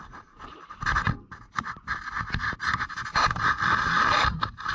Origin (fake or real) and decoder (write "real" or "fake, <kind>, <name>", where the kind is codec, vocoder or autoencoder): real